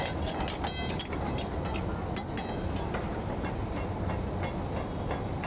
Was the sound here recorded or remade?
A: recorded